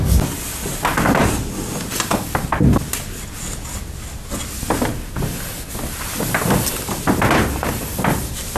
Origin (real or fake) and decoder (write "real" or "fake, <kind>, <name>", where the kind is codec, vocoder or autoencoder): real